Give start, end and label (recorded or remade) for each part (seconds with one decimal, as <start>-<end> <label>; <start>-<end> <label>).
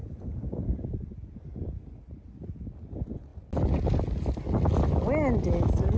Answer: 0.0-0.8 remade; 0.8-6.0 recorded